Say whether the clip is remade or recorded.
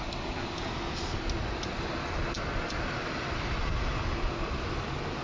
recorded